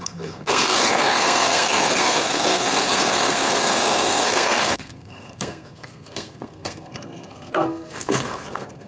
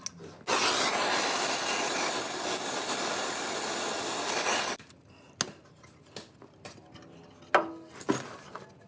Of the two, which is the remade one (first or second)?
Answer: first